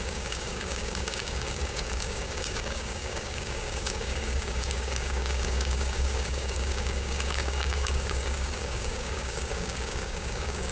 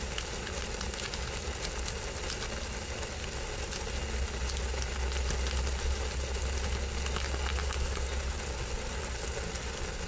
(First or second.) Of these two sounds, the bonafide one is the second